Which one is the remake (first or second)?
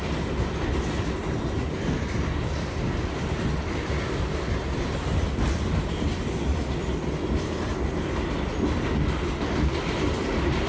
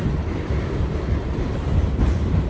second